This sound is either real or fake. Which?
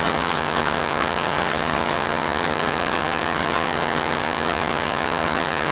fake